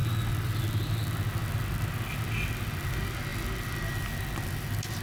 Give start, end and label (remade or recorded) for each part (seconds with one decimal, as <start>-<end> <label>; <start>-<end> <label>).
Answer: 0.0-0.6 remade; 0.6-3.3 recorded; 3.3-4.1 remade; 4.1-5.0 recorded